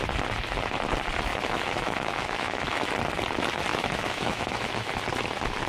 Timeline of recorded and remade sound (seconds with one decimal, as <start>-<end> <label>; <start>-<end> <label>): 0.0-1.3 recorded; 1.3-2.9 remade; 2.9-3.7 recorded; 3.7-4.9 remade; 4.9-5.7 recorded